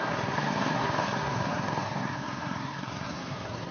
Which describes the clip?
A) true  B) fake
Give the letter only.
B